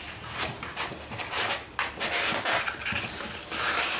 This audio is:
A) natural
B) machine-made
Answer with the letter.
A